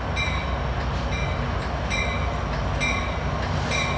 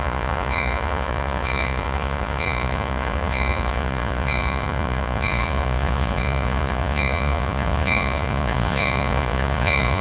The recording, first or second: first